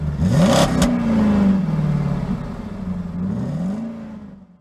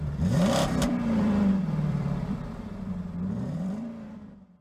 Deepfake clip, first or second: second